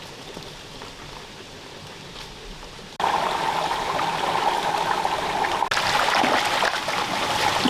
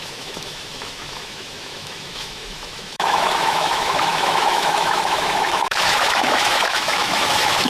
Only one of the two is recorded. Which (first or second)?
first